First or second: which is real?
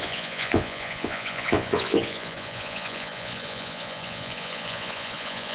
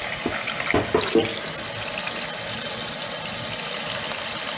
second